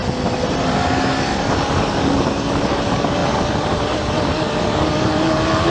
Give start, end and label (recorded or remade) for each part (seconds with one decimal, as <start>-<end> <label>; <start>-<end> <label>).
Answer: 0.0-0.6 recorded; 0.6-5.7 remade